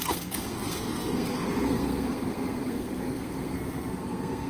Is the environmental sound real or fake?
fake